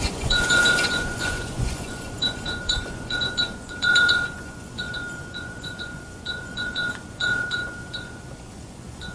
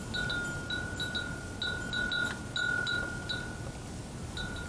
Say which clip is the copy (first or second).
first